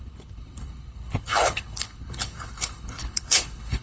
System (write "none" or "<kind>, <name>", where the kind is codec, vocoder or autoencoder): codec, HILCodec